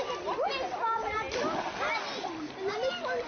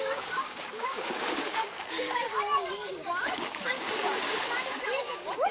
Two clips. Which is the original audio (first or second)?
first